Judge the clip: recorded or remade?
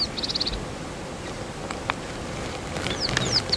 recorded